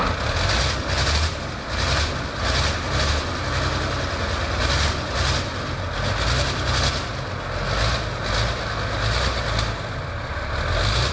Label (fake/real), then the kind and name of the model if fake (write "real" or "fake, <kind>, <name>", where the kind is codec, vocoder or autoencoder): real